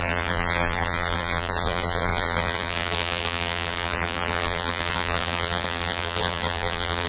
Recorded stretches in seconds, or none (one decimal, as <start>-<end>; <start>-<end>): none